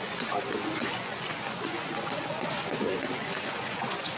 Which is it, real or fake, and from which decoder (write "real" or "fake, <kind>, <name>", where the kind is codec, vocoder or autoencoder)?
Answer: fake, vocoder, Vocos